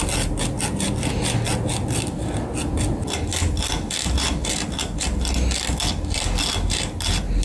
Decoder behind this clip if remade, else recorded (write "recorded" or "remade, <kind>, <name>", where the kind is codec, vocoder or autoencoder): recorded